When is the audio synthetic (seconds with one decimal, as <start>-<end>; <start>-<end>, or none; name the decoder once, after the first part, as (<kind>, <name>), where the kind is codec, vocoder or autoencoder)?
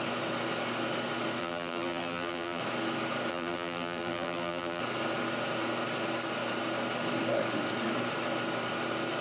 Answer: 1.4-2.6 (vocoder, BigVGAN v2); 3.3-4.8